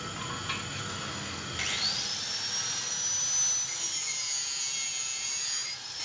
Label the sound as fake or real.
real